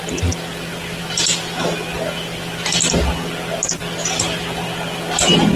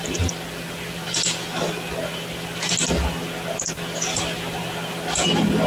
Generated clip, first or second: second